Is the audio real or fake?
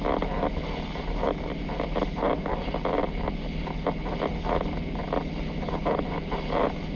real